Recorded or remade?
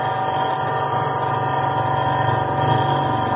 recorded